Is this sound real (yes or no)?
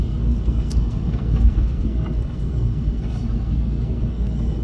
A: no